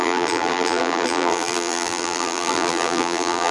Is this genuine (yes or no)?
no